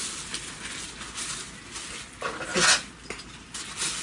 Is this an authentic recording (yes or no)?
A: yes